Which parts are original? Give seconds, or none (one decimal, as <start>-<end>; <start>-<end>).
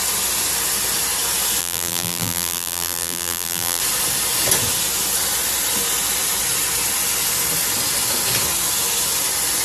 0.0-1.6; 3.8-9.6